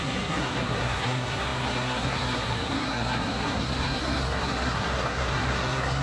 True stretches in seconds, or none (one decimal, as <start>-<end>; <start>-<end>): none